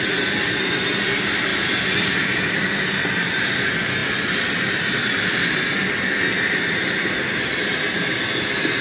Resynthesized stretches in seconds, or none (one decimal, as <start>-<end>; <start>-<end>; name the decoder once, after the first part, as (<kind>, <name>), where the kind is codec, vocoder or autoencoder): none